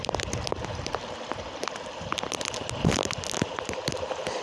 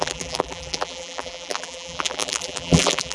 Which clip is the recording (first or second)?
first